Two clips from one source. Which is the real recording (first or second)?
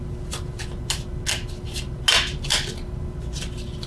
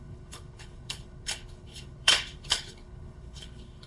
first